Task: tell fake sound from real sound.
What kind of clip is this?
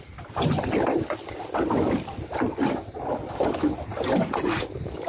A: real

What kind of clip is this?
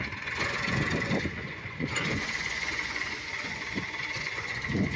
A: fake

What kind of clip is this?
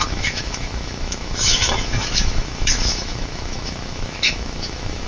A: fake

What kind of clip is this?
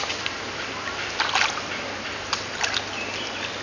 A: real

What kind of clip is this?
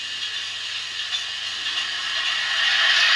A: real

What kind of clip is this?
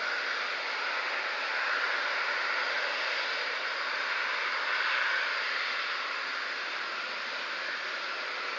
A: real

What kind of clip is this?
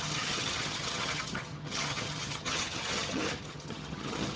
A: fake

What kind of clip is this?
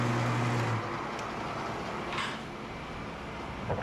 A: real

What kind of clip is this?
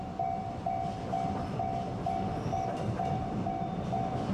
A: real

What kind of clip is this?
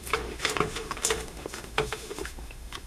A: fake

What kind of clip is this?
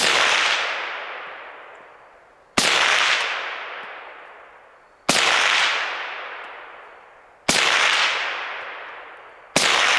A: real